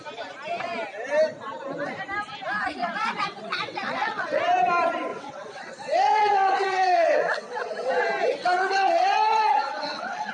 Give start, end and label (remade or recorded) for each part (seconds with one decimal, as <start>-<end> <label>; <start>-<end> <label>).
0.0-2.8 recorded; 2.8-4.4 remade; 4.4-5.1 recorded; 5.1-7.9 remade; 7.9-8.4 recorded; 8.4-10.3 remade